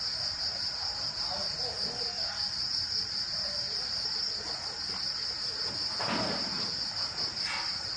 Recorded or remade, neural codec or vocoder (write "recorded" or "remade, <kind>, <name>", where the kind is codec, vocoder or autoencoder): recorded